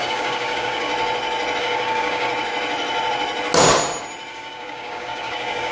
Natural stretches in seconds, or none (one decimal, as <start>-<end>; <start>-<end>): 0.9-1.6; 2.3-4.3